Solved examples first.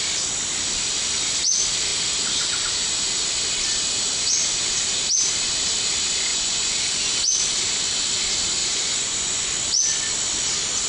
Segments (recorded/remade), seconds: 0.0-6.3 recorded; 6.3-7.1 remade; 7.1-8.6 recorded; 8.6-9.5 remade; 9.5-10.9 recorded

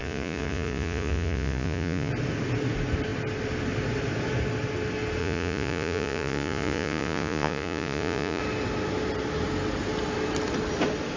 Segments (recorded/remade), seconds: 0.0-2.1 remade; 2.1-5.2 recorded; 5.2-8.4 remade; 8.4-11.2 recorded

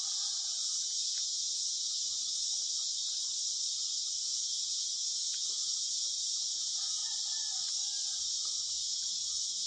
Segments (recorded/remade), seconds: 0.0-2.0 remade; 2.0-4.2 recorded; 4.2-7.0 remade; 7.0-8.1 recorded; 8.1-9.7 remade

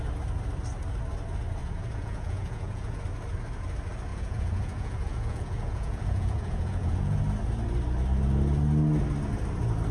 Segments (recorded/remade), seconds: 0.0-1.6 recorded; 1.6-3.0 remade; 3.0-4.1 recorded; 4.1-7.2 remade; 7.2-9.9 recorded